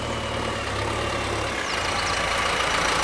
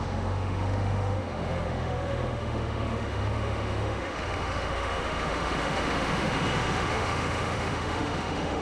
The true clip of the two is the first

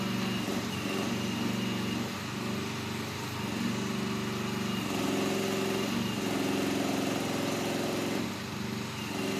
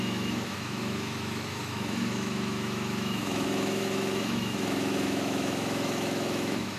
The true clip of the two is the first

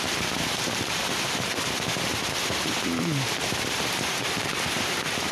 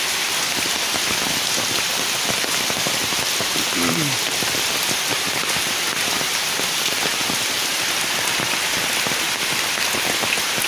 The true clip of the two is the second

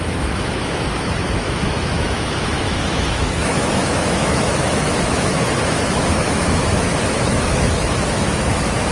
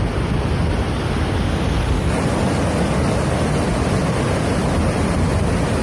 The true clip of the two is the second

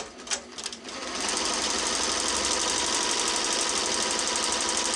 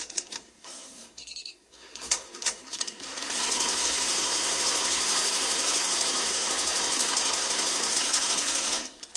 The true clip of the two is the first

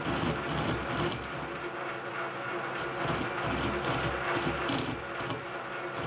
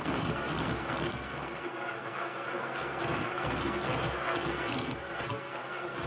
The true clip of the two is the first